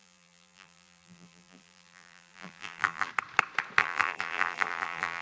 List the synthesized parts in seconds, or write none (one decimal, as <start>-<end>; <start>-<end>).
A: 0.0-3.1; 3.8-5.2